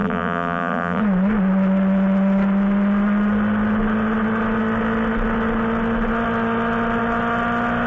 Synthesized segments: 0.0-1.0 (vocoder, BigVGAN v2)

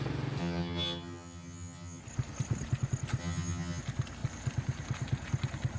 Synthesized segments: 0.4-2.0 (vocoder, HiFi-GAN); 3.2-3.8

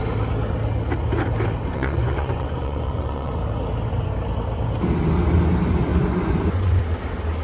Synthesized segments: 1.7-3.3 (vocoder, Vocos); 5.9-6.8

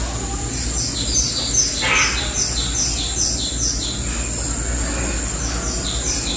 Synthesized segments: none